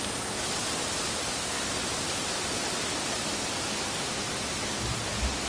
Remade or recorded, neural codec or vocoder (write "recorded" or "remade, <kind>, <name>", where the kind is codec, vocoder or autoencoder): recorded